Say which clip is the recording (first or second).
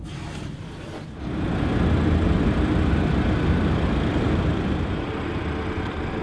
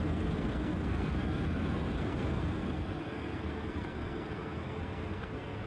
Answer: first